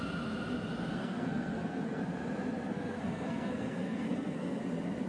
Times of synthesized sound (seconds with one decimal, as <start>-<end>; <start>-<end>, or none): 0.9-2.0; 2.7-4.6